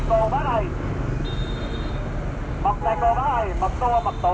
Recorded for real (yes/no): yes